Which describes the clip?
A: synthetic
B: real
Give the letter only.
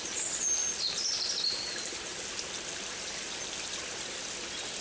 B